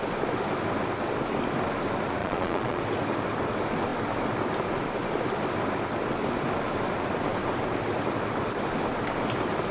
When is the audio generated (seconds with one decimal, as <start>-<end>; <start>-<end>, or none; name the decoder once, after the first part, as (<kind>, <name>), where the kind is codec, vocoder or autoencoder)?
2.2-2.8 (vocoder, Vocos)